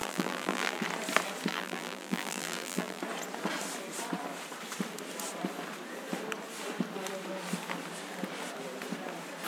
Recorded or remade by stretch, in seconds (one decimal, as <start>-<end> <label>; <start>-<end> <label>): 0.0-0.8 remade; 0.8-1.5 recorded; 1.5-3.0 remade; 3.0-9.5 recorded